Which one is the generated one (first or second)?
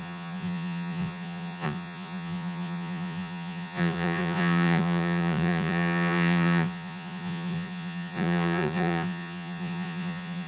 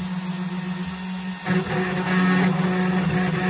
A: first